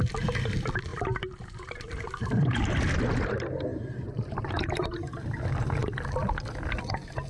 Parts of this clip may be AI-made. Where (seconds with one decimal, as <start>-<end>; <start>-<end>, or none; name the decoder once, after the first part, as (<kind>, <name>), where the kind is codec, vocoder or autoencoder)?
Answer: 0.9-3.0 (vocoder, BigVGAN v2); 3.7-5.5

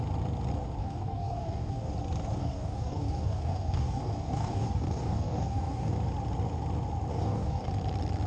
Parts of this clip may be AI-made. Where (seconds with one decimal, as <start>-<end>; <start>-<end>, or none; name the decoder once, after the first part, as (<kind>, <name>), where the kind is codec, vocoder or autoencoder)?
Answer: 0.8-1.9 (codec, DAC); 2.4-5.9; 7.1-7.7

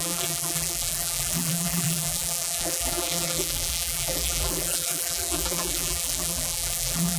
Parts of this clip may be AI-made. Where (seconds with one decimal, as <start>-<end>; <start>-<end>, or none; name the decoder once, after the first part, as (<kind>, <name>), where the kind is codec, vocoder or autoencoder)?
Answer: 0.0-7.2 (vocoder, BigVGAN v2)